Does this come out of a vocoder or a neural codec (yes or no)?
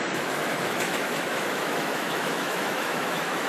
yes